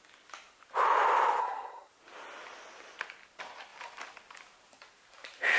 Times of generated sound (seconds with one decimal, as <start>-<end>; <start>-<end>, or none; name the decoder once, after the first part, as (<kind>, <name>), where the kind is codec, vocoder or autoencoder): 1.4-1.9 (codec, SNAC)